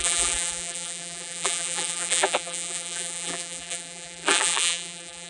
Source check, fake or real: fake